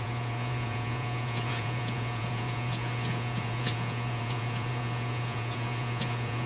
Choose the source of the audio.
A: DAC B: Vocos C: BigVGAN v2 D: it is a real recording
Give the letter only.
B